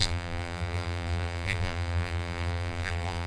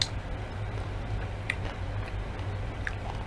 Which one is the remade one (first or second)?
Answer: first